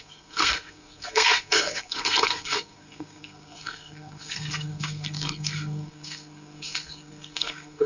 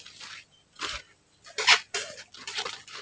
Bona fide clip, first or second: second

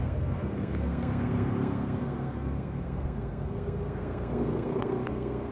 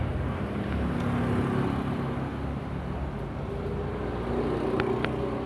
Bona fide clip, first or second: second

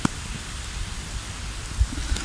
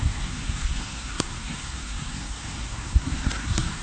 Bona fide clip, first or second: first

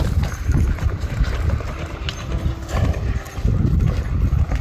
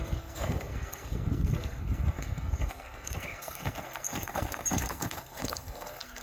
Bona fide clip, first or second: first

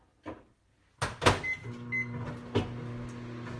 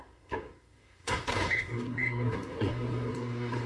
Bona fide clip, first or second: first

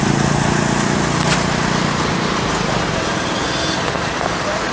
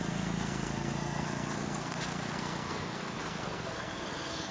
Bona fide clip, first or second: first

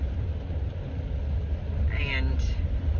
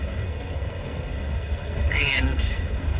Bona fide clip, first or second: first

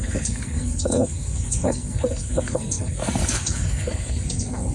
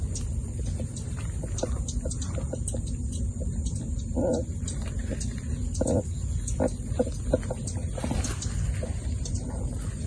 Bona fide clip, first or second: second